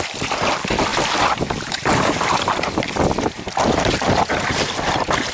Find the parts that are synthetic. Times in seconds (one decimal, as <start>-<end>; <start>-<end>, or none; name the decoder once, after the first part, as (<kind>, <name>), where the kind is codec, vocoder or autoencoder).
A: none